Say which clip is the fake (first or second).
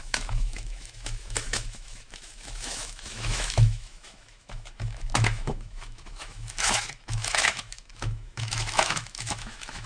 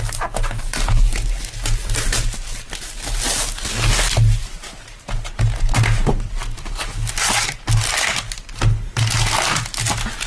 first